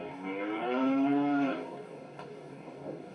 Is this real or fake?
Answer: fake